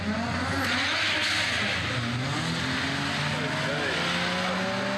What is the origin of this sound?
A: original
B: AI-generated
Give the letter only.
A